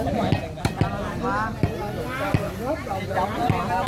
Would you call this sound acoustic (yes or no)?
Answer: yes